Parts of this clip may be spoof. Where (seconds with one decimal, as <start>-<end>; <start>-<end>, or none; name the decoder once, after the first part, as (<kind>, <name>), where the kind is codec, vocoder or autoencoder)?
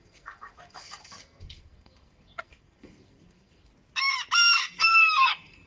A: 0.0-3.7 (codec, SNAC); 4.6-5.7